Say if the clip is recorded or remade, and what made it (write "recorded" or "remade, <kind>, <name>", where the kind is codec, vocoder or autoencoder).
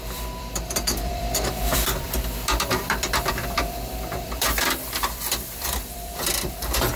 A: remade, vocoder, BigVGAN v2